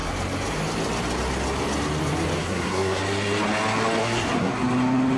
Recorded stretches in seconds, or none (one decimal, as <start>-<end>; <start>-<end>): 0.0-2.4; 3.0-4.0; 4.5-5.2